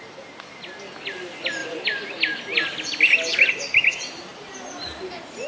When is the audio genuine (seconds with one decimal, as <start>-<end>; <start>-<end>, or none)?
0.0-5.5